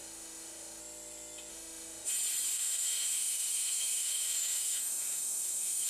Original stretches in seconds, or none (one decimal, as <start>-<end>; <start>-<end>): 0.8-1.5; 2.1-2.5